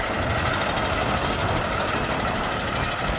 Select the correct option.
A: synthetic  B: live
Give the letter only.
B